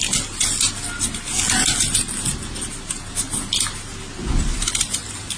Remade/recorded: recorded